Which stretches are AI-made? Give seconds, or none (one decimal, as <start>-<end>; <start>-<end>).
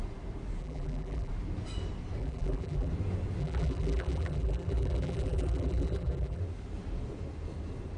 0.6-1.3; 2.2-2.9; 3.4-6.4